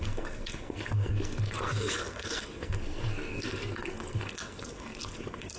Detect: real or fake fake